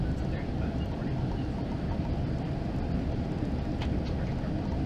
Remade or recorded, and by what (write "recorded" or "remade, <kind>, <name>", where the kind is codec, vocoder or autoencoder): remade, vocoder, BigVGAN v2